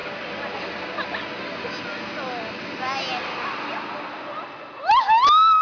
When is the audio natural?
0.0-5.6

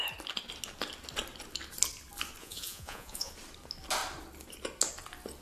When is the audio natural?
0.0-2.4; 3.3-5.4

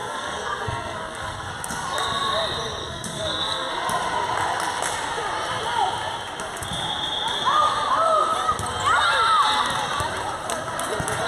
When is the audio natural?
1.5-2.8; 3.7-11.3